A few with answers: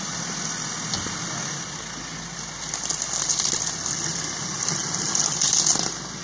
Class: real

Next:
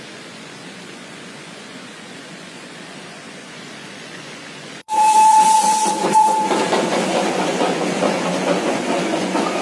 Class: fake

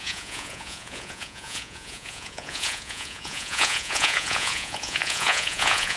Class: fake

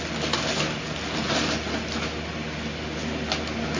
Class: real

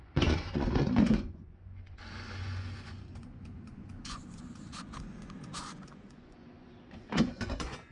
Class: fake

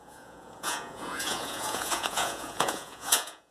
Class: fake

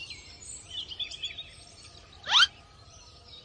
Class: real